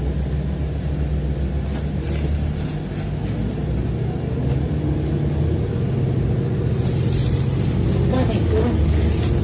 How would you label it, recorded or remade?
recorded